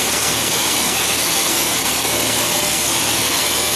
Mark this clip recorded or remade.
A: remade